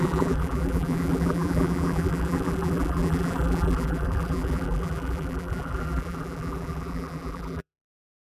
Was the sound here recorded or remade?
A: remade